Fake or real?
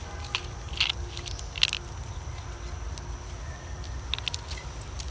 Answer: real